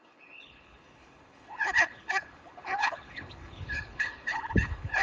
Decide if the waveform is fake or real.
fake